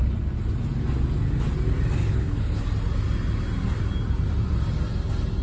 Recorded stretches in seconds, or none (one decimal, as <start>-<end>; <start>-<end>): 0.0-2.0; 2.6-5.4